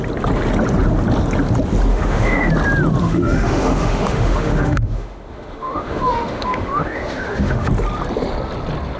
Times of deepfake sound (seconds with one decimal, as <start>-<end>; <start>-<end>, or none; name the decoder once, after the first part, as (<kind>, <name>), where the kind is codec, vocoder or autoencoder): 1.9-2.5 (autoencoder, DAC-VAE); 3.0-7.7